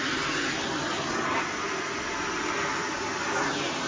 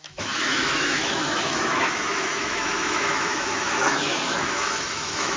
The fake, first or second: second